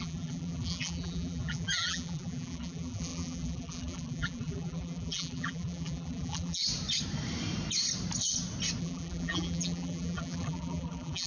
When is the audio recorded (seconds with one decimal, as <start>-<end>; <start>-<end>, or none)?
6.6-8.8